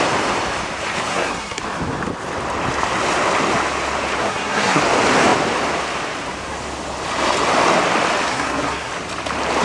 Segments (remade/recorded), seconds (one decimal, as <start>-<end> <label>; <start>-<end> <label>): 0.0-1.1 recorded; 1.1-1.6 remade; 1.6-4.2 recorded; 4.2-4.8 remade; 4.8-8.3 recorded; 8.3-8.9 remade; 8.9-9.6 recorded